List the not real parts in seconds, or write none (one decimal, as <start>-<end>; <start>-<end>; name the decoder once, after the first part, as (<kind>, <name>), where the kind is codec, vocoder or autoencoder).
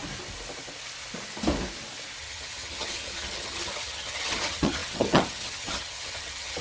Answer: 2.2-6.6 (vocoder, HiFi-GAN)